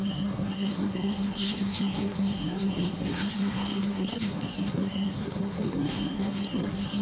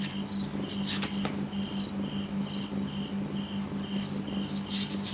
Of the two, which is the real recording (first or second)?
second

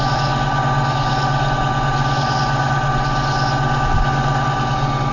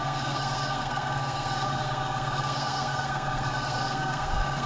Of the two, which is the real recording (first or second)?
first